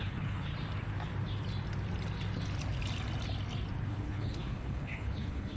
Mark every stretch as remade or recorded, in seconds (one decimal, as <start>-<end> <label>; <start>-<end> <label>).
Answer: 0.0-0.5 remade; 0.5-3.9 recorded; 3.9-5.6 remade